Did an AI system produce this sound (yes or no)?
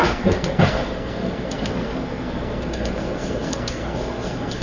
yes